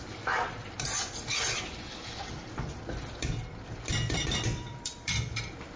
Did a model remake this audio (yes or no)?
yes